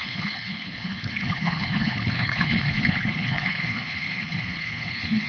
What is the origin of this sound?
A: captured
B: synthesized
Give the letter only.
B